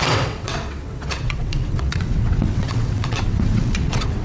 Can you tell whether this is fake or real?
fake